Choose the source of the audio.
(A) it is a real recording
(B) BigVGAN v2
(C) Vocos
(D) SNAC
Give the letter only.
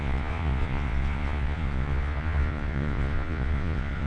C